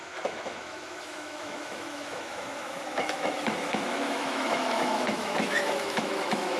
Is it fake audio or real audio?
fake